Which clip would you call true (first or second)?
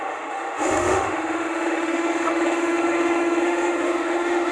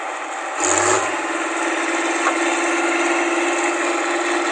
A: second